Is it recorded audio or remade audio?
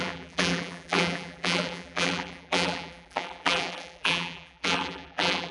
remade